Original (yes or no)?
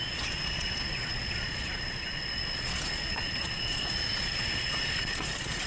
no